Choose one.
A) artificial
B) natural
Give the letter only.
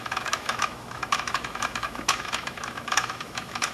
A